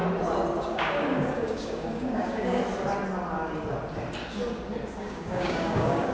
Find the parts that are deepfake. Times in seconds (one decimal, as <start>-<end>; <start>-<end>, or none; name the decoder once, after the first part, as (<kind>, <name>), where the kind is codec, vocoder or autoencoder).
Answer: 0.7-2.6 (codec, DAC); 5.0-6.1